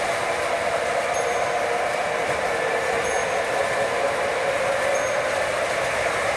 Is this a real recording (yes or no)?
yes